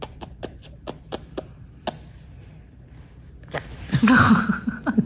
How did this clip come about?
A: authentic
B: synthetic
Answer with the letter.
A